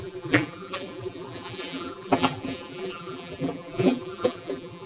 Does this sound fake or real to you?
fake